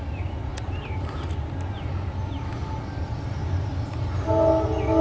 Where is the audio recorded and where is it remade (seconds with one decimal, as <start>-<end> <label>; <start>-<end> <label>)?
0.0-0.5 recorded; 0.5-1.9 remade; 1.9-3.4 recorded; 3.4-4.2 remade; 4.2-5.0 recorded